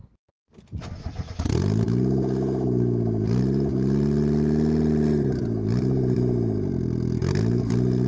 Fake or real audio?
real